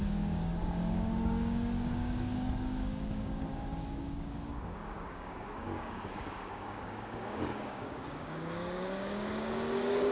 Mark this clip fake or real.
fake